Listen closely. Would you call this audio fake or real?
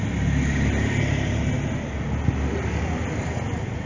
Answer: real